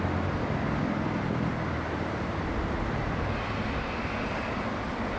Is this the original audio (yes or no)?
yes